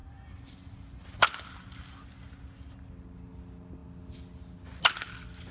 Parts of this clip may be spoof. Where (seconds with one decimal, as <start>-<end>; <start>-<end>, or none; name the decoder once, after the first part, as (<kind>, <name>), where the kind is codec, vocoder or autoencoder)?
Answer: none